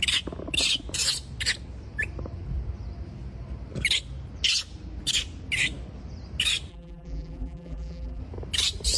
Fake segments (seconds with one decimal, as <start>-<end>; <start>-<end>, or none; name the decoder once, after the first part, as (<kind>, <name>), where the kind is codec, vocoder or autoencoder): 6.7-8.2 (vocoder, BigVGAN v2)